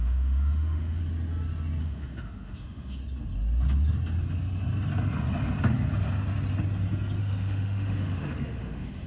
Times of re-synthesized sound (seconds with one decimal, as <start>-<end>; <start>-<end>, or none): 0.0-1.0; 1.8-3.0; 7.2-9.1